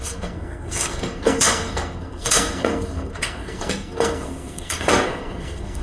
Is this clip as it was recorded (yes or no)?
no